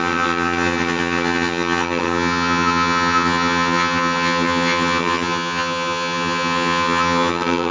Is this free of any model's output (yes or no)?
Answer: no